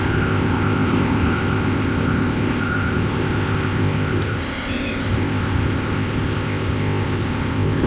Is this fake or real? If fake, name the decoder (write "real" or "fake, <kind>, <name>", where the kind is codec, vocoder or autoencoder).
fake, codec, ZipCodec